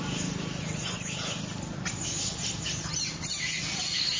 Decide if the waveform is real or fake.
real